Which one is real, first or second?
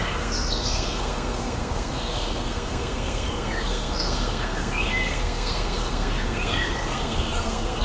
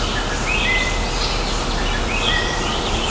second